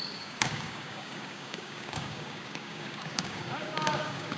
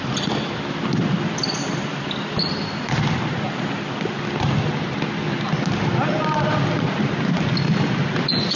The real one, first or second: second